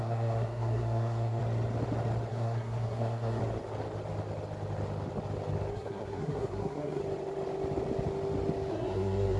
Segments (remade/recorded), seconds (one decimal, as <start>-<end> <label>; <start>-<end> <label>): 0.0-1.4 remade; 1.4-2.3 recorded; 2.3-3.4 remade; 3.4-5.7 recorded; 5.7-7.0 remade; 7.0-8.7 recorded; 8.7-9.4 remade